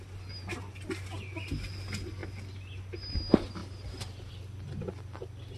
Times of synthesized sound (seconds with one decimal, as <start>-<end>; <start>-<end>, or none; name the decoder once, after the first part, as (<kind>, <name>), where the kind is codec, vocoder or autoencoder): none